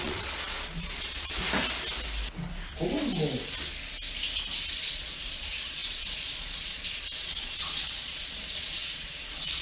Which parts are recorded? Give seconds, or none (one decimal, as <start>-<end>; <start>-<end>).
1.4-4.7